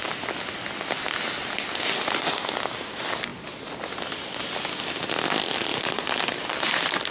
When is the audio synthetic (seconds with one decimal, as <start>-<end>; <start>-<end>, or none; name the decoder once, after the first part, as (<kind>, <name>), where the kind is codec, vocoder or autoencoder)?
5.7-7.1 (vocoder, BigVGAN v2)